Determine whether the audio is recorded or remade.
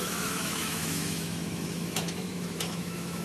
remade